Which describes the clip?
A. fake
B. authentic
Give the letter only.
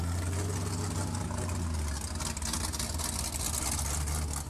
B